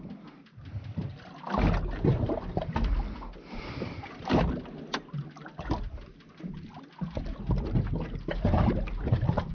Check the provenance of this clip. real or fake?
real